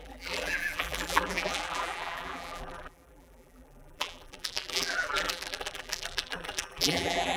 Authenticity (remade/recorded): remade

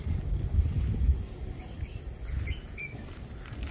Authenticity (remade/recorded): recorded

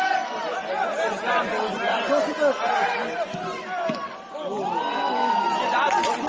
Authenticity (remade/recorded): recorded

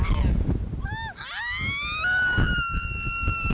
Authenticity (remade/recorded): recorded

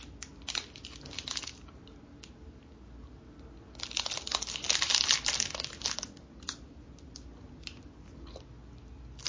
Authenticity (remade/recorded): recorded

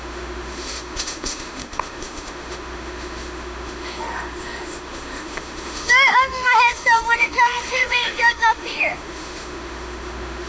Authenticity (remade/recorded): remade